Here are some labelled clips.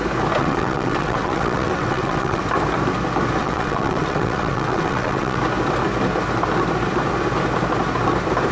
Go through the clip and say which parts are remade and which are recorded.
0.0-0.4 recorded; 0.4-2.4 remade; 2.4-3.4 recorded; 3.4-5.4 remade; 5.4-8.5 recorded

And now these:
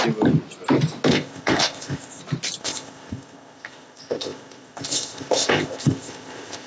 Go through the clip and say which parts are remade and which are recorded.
0.0-1.1 recorded; 1.1-2.2 remade; 2.2-2.6 recorded; 2.6-6.7 remade

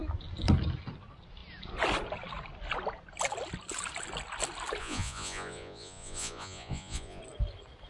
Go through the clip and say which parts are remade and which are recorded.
0.0-4.8 recorded; 4.8-7.2 remade; 7.2-7.9 recorded